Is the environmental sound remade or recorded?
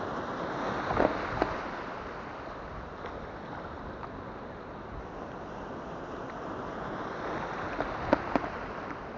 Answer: recorded